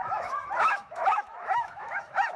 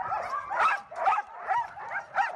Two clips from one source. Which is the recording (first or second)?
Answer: second